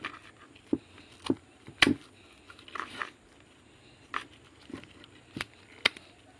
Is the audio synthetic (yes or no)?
no